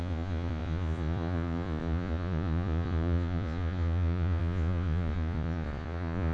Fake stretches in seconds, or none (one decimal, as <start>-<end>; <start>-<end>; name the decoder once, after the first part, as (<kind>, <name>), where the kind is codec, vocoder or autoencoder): 0.0-6.3 (vocoder, Vocos)